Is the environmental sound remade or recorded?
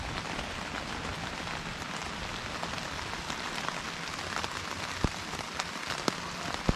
recorded